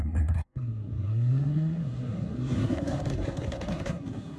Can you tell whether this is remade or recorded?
remade